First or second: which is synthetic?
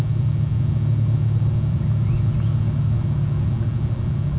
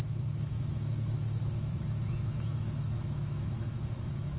second